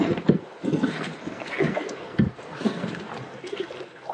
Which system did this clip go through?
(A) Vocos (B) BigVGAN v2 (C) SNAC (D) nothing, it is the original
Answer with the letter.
C